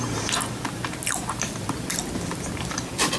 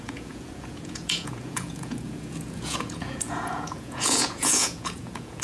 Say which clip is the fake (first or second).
second